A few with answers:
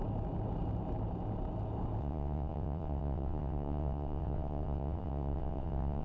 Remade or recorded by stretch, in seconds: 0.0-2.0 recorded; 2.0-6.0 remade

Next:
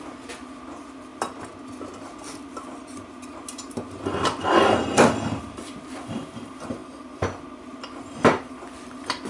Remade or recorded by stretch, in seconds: 0.0-1.1 remade; 1.1-5.4 recorded; 5.4-6.8 remade; 6.8-7.6 recorded; 7.6-9.3 remade

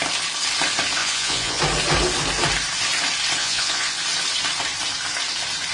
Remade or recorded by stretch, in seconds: 0.0-1.0 recorded; 1.0-1.6 remade; 1.6-3.4 recorded; 3.4-4.0 remade; 4.0-5.7 recorded

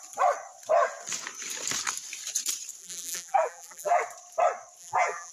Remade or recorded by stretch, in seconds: 0.0-2.8 recorded; 2.8-4.0 remade; 4.0-4.8 recorded; 4.8-5.3 remade

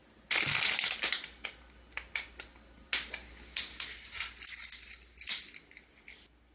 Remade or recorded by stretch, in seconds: 0.0-6.5 recorded

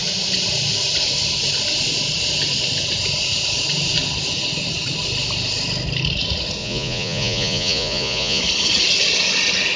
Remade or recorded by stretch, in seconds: 0.0-6.6 recorded; 6.6-8.4 remade; 8.4-9.8 recorded

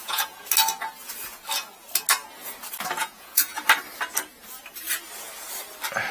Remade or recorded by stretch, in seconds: 0.0-0.5 remade; 0.5-3.0 recorded; 3.0-3.6 remade; 3.6-6.1 recorded